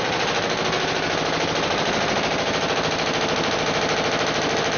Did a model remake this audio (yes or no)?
no